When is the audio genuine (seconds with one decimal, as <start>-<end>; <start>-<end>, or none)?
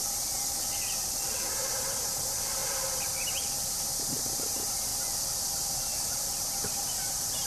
0.0-1.5; 4.9-6.4